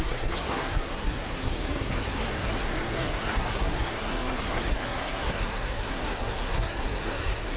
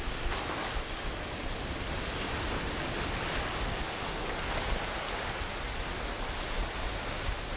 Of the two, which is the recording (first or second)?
second